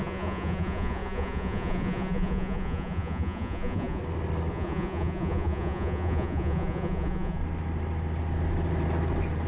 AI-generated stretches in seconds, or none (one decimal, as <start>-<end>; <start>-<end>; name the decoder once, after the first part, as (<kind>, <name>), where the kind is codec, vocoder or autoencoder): 0.0-4.0 (vocoder, Vocos); 4.5-7.4